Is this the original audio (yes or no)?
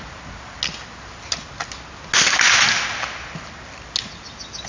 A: yes